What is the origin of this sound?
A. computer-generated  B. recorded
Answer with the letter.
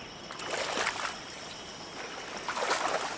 B